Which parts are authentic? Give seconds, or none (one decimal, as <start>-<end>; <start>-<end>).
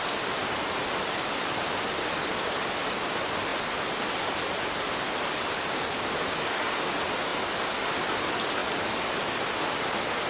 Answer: 0.0-0.4; 2.5-8.6; 9.3-10.3